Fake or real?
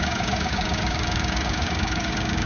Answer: fake